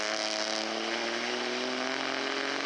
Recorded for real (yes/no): yes